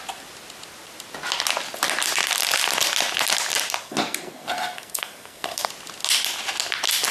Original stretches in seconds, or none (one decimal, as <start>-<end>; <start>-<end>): 0.0-3.8; 5.7-7.1